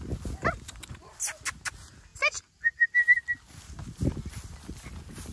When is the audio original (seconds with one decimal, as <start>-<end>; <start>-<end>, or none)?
0.0-5.3